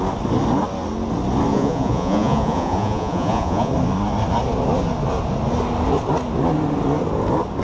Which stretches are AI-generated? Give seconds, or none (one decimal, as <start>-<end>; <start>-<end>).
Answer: 1.5-3.7